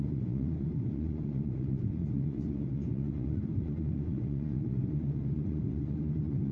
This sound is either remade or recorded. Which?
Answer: remade